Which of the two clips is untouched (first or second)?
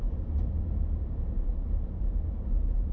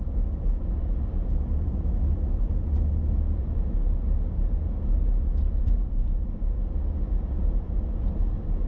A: second